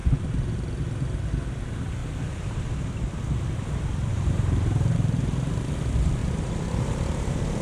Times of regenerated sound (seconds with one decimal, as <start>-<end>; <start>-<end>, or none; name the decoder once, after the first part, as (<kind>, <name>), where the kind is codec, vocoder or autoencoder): 4.1-5.5 (vocoder, BigVGAN v2); 6.2-7.6